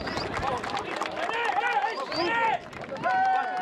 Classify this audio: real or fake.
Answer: real